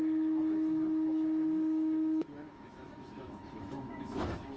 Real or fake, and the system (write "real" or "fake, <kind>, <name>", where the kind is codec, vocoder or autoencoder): fake, autoencoder, DAC-VAE